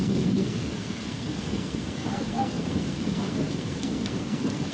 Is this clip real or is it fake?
fake